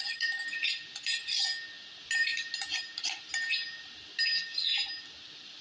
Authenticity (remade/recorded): recorded